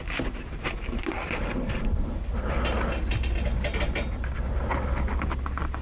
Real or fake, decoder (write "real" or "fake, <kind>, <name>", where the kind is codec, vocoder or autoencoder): real